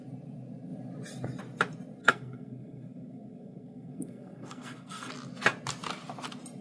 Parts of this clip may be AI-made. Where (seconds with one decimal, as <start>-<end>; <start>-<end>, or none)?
2.0-5.1